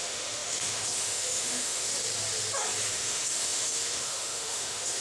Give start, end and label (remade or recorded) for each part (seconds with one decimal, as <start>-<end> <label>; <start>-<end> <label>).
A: 0.0-1.9 remade; 1.9-2.9 recorded; 2.9-5.0 remade